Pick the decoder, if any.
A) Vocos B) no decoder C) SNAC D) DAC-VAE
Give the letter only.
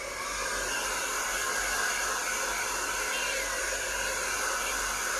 B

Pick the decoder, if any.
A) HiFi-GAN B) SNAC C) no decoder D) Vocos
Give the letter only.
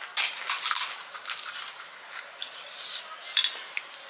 C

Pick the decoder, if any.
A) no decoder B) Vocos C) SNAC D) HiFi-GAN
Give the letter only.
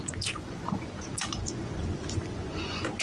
B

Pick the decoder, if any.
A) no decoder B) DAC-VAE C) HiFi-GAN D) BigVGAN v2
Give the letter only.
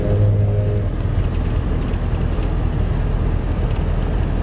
A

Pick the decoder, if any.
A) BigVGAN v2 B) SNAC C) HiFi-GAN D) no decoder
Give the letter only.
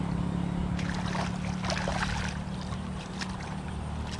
D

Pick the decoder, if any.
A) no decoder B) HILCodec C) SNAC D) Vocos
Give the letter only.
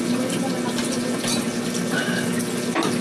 A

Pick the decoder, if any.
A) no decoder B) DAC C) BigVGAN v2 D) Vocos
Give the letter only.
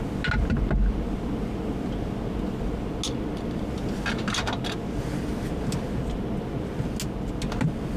A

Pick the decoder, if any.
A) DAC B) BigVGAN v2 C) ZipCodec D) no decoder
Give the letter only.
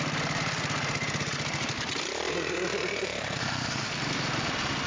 B